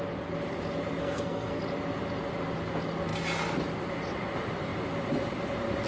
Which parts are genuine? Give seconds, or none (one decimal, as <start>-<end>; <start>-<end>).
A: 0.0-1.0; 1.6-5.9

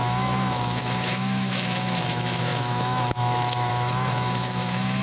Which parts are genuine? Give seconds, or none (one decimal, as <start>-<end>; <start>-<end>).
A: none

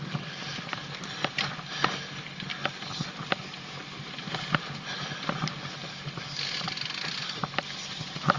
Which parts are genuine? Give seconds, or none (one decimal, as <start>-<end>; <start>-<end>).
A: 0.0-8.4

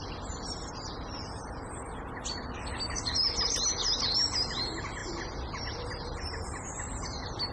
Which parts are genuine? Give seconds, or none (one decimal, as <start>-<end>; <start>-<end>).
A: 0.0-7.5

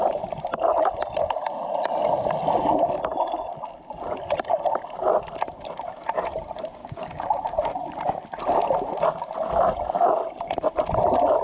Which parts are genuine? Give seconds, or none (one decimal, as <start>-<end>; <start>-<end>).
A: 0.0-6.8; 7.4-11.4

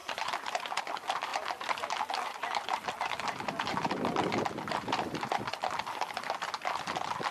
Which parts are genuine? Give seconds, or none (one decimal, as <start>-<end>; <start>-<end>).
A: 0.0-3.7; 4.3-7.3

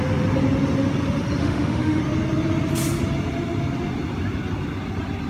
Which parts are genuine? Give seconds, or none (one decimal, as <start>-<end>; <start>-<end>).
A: 0.0-1.4; 2.0-5.3